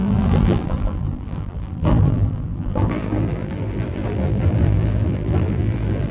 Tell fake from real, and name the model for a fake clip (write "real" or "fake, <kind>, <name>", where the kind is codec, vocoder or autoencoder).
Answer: fake, vocoder, BigVGAN v2